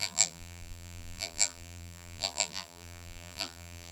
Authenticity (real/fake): fake